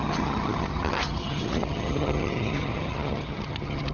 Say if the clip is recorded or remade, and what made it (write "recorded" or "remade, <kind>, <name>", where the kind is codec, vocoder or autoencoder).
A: remade, vocoder, HiFi-GAN